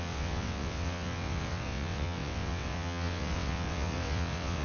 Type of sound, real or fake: fake